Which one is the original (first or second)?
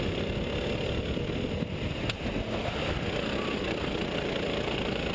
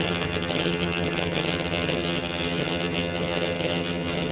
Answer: first